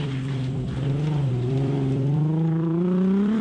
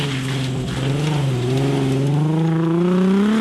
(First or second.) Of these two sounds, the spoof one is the first